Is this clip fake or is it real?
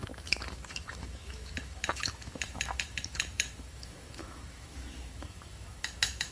fake